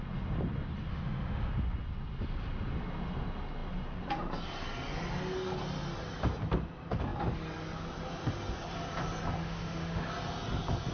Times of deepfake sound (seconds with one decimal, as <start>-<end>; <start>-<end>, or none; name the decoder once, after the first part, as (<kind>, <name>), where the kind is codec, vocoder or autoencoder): 0.9-1.5 (autoencoder, DAC-VAE); 9.4-10.0